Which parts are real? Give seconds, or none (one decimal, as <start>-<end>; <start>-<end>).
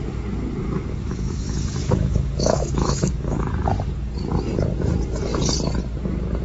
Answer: 0.0-0.6; 3.5-6.4